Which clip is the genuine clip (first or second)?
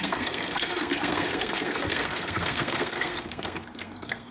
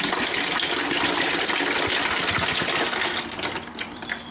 second